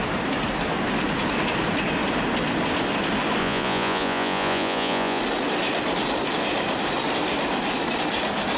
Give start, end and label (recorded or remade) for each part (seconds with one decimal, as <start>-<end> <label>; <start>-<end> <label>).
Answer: 0.0-3.4 recorded; 3.4-5.2 remade; 5.2-8.6 recorded